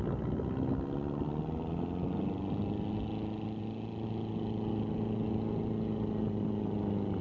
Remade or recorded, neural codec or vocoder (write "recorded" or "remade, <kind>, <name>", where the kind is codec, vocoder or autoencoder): recorded